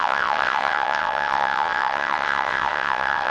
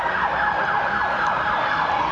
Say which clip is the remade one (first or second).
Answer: first